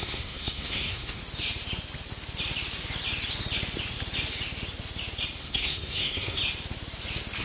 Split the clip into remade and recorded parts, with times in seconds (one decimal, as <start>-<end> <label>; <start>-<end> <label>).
0.0-1.2 remade; 1.2-5.4 recorded; 5.4-6.4 remade; 6.4-7.4 recorded